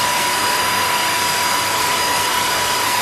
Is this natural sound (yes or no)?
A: no